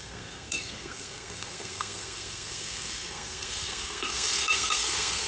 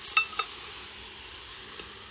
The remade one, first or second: first